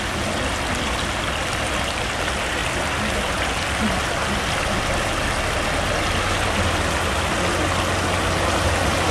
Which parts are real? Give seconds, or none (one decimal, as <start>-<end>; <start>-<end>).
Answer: 0.0-9.1